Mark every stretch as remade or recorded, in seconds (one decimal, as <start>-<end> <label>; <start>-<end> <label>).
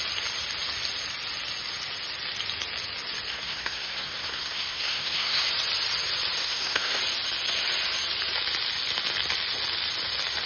0.0-3.3 recorded; 3.3-5.5 remade; 5.5-6.4 recorded; 6.4-7.0 remade; 7.0-10.5 recorded